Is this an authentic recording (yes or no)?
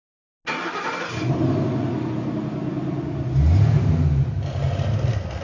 yes